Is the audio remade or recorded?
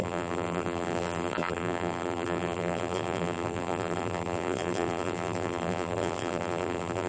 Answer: remade